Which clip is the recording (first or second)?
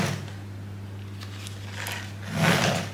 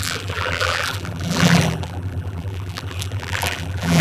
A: first